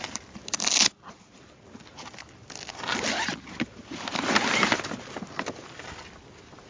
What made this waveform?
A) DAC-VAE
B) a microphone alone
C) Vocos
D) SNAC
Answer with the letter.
B